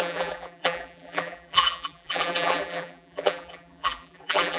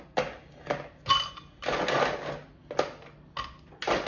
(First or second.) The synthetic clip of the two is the first